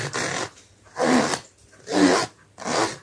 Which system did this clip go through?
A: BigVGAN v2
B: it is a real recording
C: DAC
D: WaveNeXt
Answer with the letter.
B